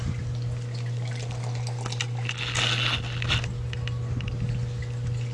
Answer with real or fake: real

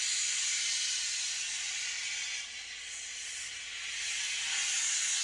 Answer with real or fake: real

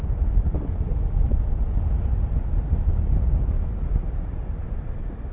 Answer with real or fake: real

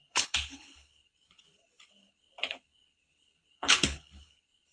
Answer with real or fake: fake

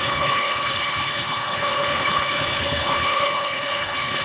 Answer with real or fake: fake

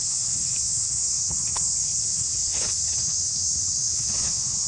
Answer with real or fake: fake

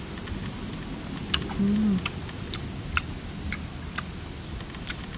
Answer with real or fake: real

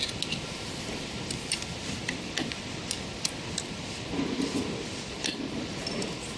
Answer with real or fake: real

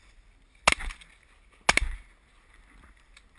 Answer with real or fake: real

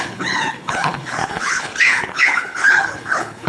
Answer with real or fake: fake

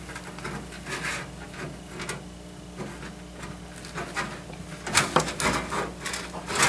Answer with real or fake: real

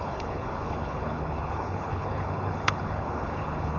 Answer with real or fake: fake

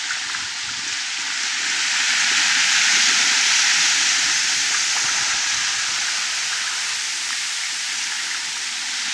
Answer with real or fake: real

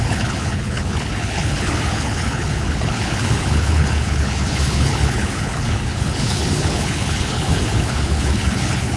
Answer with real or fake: fake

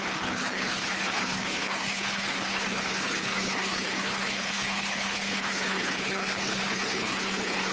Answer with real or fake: fake